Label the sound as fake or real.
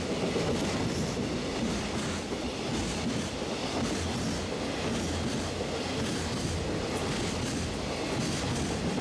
real